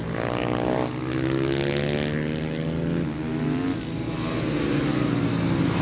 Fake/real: real